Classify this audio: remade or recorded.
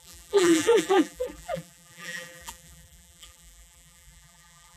remade